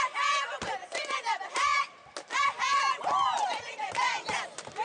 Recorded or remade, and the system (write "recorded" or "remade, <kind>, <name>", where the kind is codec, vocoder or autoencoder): recorded